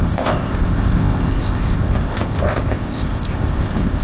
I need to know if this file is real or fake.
fake